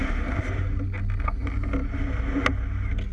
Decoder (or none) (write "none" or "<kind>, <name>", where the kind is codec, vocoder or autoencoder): none